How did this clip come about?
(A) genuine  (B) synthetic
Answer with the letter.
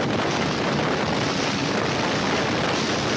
A